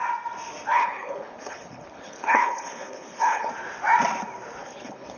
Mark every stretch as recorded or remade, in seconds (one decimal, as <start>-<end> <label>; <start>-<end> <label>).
0.0-0.7 recorded; 0.7-3.5 remade; 3.5-4.6 recorded; 4.6-5.2 remade